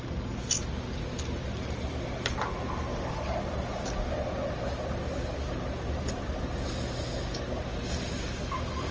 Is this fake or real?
real